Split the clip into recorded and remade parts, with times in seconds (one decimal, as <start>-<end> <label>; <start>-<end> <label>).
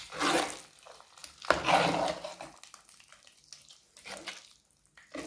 0.0-5.3 recorded